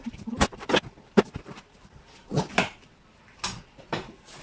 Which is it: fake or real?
fake